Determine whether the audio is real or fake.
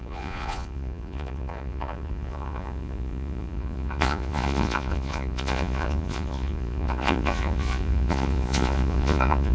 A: fake